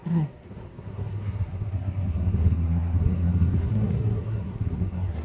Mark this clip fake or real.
fake